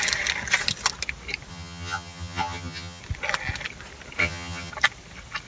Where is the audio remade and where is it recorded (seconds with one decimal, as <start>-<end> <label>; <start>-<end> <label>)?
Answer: 0.0-1.5 recorded; 1.5-3.0 remade; 3.0-4.2 recorded; 4.2-4.7 remade; 4.7-5.5 recorded